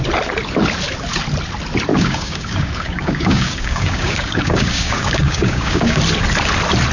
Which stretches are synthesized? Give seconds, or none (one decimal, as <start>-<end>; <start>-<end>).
1.9-6.0